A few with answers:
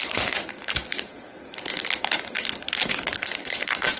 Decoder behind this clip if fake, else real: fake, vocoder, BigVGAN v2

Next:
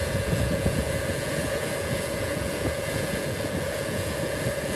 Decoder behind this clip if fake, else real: fake, vocoder, Vocos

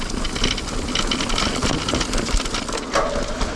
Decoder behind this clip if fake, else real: real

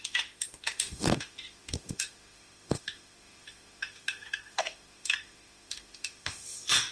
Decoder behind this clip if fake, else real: fake, autoencoder, DAC-VAE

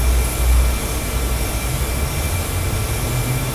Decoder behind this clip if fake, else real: real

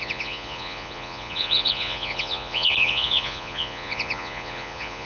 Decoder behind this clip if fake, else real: fake, vocoder, Vocos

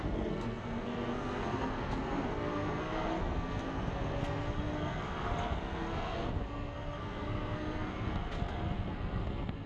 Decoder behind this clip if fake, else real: fake, codec, SNAC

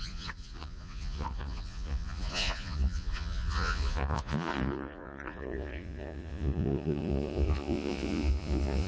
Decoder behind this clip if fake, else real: fake, vocoder, Vocos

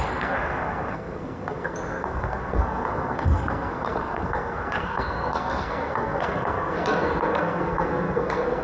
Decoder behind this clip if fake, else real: fake, codec, SNAC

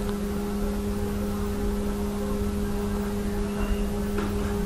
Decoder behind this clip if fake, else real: real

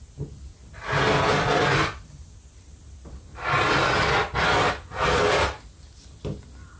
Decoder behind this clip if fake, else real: real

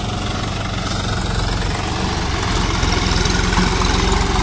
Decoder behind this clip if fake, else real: real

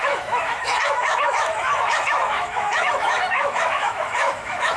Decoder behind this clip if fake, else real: fake, autoencoder, DAC-VAE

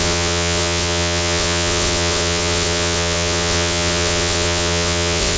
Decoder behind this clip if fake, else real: fake, vocoder, WaveNeXt